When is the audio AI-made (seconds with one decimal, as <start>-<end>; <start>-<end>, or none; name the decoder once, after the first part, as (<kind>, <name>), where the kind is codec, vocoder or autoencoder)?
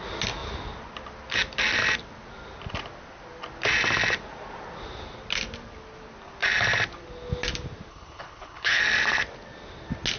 7.9-8.8 (codec, HILCodec)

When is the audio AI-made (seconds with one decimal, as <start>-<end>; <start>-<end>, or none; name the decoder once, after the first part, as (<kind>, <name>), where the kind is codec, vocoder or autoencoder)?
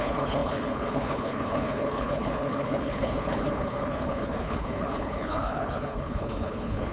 0.0-6.9 (codec, HILCodec)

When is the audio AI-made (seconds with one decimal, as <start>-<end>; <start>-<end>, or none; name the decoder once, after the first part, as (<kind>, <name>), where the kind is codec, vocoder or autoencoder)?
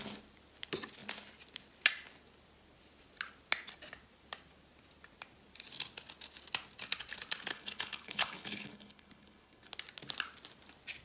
7.5-9.7 (codec, HILCodec)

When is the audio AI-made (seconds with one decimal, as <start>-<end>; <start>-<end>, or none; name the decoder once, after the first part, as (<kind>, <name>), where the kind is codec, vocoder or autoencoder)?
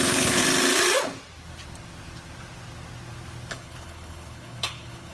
0.0-0.4 (codec, HILCodec); 3.5-5.1